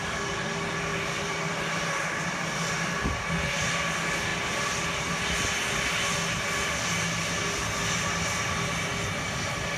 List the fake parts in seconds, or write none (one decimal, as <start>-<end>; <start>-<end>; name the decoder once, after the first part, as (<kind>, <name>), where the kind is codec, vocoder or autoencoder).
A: 0.9-2.8 (vocoder, BigVGAN v2)